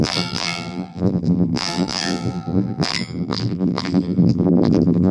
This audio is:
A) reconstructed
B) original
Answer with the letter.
A